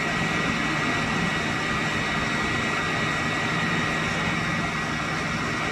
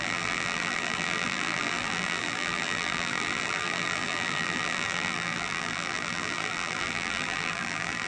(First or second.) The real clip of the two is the first